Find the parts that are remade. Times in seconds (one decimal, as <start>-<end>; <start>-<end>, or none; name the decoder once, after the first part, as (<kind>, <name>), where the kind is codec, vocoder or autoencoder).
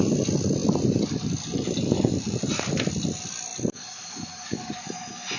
none